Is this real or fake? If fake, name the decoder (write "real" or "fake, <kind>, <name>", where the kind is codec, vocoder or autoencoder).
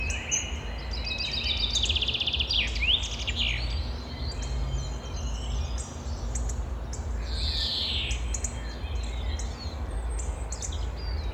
real